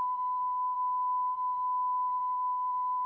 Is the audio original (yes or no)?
no